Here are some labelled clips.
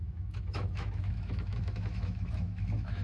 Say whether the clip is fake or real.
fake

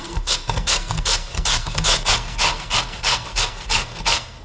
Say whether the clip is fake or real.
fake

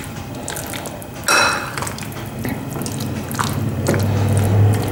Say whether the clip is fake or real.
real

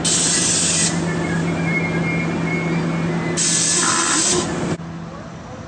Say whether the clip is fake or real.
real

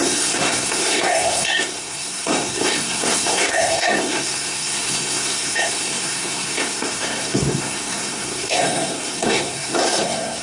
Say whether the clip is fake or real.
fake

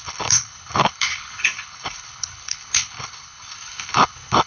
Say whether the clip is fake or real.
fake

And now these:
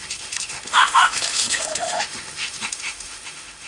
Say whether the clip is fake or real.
fake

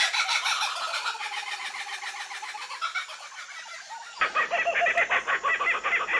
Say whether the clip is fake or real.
real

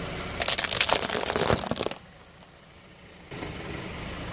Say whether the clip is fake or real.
real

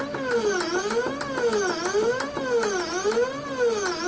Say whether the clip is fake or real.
real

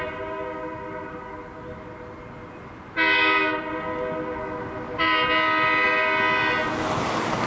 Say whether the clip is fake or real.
real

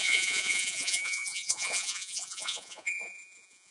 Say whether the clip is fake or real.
fake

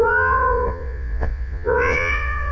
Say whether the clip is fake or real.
fake